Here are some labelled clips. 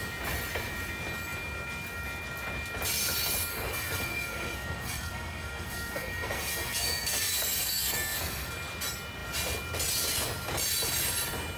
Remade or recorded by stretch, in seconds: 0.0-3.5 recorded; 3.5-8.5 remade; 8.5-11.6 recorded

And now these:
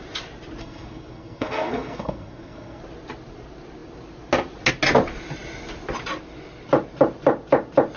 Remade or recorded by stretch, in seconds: 0.0-0.6 recorded; 0.6-2.8 remade; 2.8-8.0 recorded

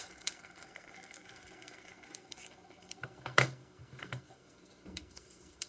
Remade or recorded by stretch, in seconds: 0.0-5.7 remade

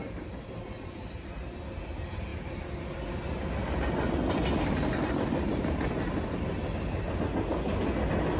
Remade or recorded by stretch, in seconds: 0.0-8.4 recorded

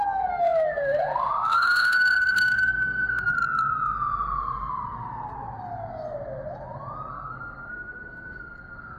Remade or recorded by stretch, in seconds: 0.0-3.3 remade; 3.3-7.1 recorded; 7.1-9.0 remade

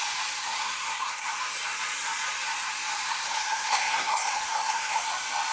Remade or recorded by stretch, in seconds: 0.0-0.4 recorded; 0.4-1.4 remade; 1.4-3.1 recorded; 3.1-5.1 remade; 5.1-5.5 recorded